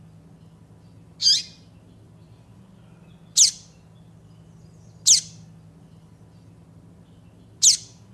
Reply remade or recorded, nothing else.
recorded